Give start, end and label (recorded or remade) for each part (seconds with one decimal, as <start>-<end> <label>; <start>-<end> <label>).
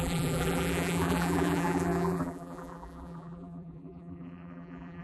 0.0-5.0 remade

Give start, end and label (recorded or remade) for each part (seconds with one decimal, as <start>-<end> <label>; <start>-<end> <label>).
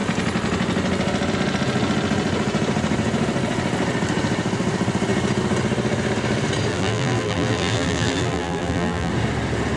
0.0-6.7 recorded; 6.7-9.1 remade; 9.1-9.8 recorded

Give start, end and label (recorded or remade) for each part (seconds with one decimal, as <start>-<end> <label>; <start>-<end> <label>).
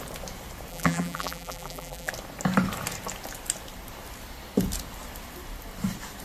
0.0-0.7 recorded; 0.7-2.1 remade; 2.1-6.2 recorded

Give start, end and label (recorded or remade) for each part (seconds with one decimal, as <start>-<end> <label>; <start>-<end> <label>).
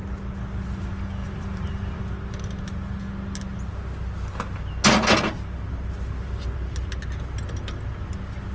0.0-1.2 recorded; 1.2-2.0 remade; 2.0-8.5 recorded